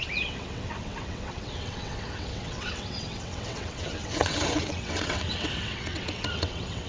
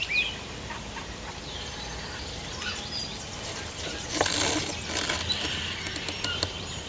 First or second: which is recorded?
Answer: second